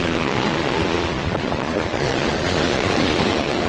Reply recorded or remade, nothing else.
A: remade